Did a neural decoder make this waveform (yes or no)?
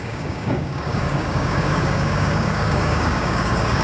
yes